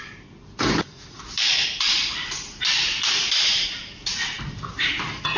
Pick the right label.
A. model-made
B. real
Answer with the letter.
A